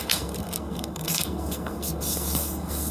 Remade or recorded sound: remade